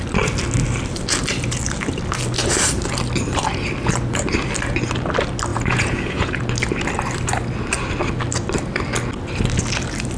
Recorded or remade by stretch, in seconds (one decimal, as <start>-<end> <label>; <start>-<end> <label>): 0.0-5.5 recorded; 5.5-6.4 remade; 6.4-10.2 recorded